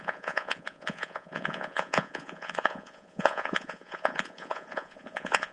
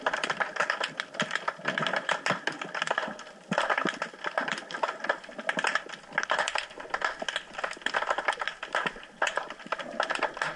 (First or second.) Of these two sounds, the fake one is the first